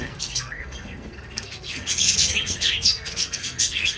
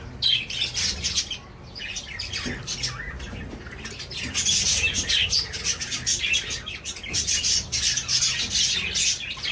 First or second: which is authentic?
second